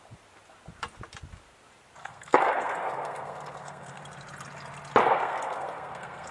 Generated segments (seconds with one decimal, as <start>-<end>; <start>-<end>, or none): 2.0-4.0; 5.0-6.3

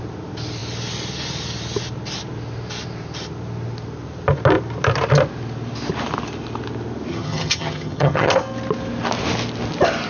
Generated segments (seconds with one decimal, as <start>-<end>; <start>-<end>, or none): 7.1-8.3

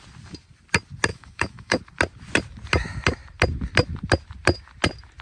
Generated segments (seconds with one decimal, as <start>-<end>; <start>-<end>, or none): 1.1-1.8